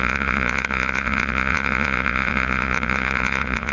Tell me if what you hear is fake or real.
fake